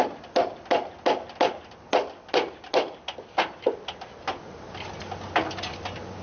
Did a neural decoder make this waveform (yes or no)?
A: no